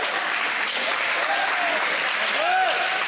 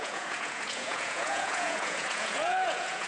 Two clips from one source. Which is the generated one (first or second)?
second